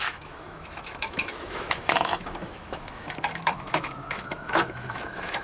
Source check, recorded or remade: remade